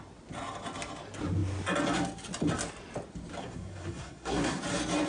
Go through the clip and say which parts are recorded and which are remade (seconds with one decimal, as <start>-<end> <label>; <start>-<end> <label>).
0.0-3.4 recorded; 3.4-4.6 remade; 4.6-5.1 recorded